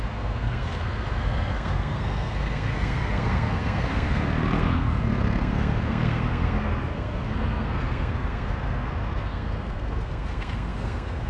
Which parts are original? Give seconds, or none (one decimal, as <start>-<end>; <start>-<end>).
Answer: none